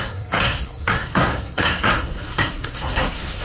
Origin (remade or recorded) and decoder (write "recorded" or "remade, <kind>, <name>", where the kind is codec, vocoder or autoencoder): remade, codec, SNAC